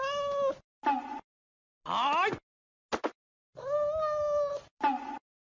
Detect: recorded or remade recorded